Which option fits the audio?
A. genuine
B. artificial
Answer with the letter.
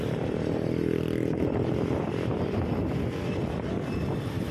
B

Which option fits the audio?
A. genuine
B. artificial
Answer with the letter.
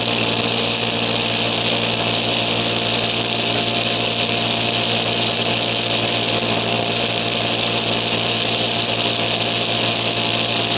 A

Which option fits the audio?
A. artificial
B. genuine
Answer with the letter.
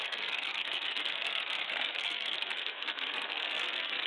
A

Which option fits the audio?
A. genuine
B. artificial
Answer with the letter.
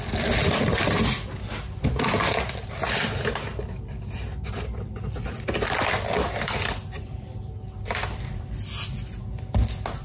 A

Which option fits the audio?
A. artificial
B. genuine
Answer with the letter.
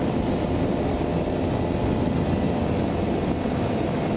B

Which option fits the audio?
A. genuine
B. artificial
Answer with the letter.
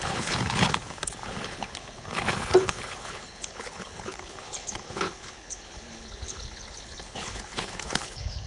B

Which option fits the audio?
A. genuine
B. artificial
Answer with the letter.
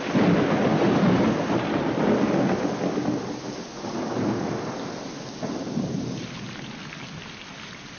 A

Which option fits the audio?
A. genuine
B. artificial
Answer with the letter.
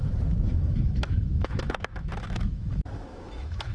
B